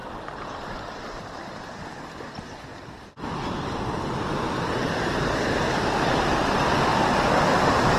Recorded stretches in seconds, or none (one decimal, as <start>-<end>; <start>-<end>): 0.0-8.0